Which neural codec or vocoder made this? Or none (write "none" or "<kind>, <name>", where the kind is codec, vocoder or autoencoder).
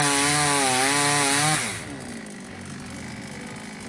none